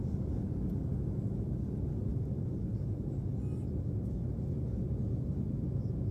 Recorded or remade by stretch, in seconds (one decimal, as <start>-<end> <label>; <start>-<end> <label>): 0.0-2.1 recorded; 2.1-3.4 remade; 3.4-6.1 recorded